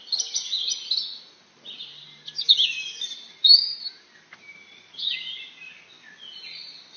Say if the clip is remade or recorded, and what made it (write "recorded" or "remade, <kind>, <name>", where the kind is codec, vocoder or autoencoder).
recorded